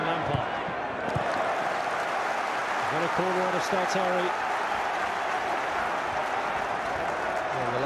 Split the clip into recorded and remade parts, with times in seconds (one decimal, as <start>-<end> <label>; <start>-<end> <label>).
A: 0.0-7.9 recorded